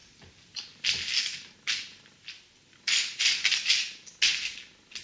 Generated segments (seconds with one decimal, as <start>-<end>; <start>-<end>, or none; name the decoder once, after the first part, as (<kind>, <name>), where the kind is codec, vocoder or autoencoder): 0.0-1.5 (vocoder, BigVGAN v2); 1.9-3.2